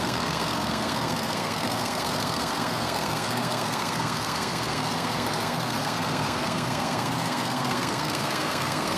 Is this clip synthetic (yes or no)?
yes